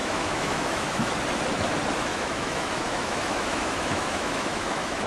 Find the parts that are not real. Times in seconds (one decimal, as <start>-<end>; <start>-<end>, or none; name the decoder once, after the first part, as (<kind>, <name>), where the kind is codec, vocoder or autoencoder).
0.0-1.1 (autoencoder, DAC-VAE); 2.1-5.1